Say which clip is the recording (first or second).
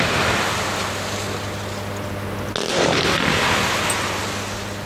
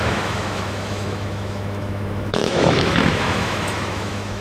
first